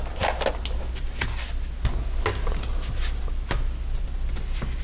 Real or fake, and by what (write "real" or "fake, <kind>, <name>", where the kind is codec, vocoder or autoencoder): real